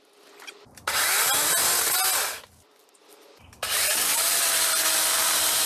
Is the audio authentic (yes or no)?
yes